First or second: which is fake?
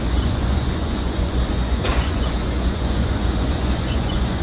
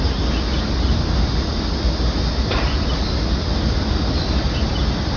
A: first